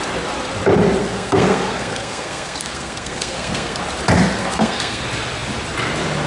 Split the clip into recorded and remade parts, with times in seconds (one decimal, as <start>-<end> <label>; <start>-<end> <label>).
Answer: 0.0-1.0 recorded; 1.0-3.8 remade; 3.8-4.4 recorded; 4.4-5.0 remade; 5.0-6.3 recorded